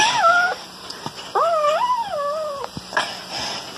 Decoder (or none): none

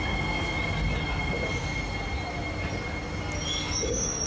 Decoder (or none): none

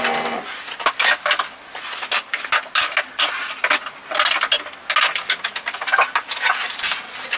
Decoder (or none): none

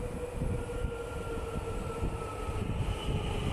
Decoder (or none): none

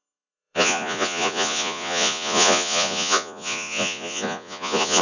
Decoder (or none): vocoder, Vocos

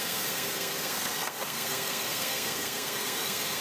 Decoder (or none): codec, SNAC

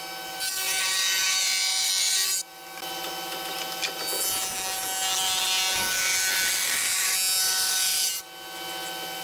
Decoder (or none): none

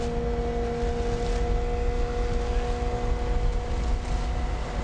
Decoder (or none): none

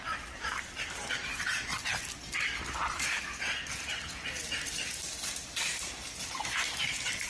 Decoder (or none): none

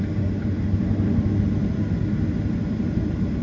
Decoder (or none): none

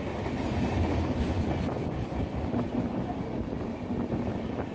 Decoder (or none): none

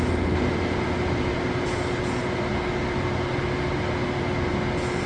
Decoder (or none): none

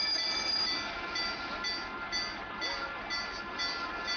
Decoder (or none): none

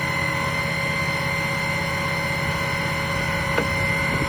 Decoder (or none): none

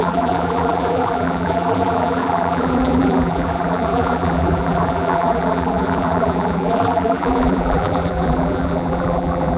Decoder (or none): vocoder, BigVGAN v2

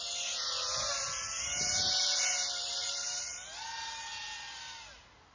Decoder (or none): none